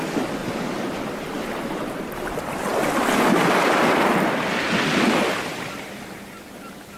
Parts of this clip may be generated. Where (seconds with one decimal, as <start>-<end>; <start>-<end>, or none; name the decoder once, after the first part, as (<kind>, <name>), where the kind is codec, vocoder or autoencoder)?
0.4-1.1 (vocoder, BigVGAN v2)